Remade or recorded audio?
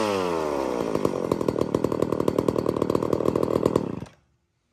recorded